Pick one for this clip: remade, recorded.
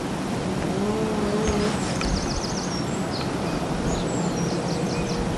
recorded